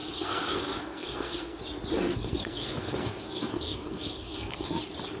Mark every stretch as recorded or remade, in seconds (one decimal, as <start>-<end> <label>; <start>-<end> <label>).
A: 0.0-1.6 remade; 1.6-2.1 recorded; 2.1-4.8 remade; 4.8-5.2 recorded